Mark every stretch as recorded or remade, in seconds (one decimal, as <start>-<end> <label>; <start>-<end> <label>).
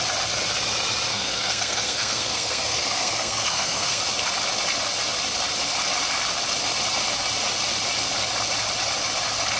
0.0-1.1 recorded; 1.1-4.0 remade; 4.0-9.6 recorded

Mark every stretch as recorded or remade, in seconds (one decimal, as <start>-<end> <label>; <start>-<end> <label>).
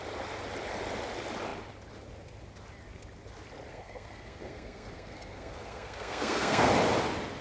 0.0-3.7 recorded; 3.7-6.7 remade; 6.7-7.4 recorded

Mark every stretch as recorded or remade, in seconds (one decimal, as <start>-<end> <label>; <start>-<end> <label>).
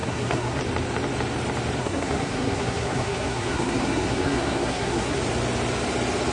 0.0-0.6 remade; 0.6-1.8 recorded; 1.8-5.2 remade; 5.2-6.3 recorded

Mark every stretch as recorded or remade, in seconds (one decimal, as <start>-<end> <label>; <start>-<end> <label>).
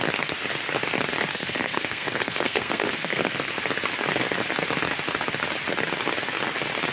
0.0-1.3 recorded; 1.3-3.5 remade; 3.5-6.9 recorded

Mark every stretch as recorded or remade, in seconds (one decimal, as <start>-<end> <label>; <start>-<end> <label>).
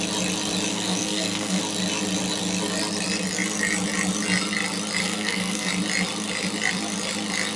0.0-0.7 recorded; 0.7-1.6 remade; 1.6-5.0 recorded; 5.0-5.7 remade; 5.7-7.6 recorded